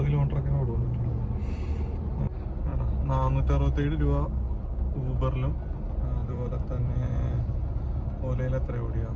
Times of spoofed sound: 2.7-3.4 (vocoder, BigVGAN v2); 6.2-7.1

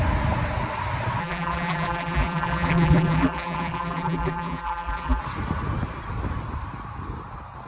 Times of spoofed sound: 1.2-5.2 (vocoder, BigVGAN v2)

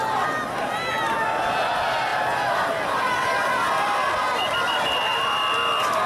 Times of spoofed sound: none